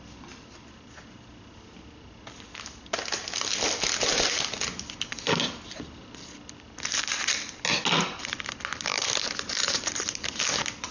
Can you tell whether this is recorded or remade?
recorded